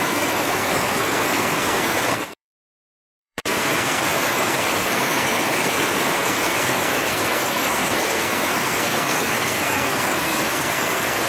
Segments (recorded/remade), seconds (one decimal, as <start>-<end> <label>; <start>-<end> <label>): 0.0-11.3 remade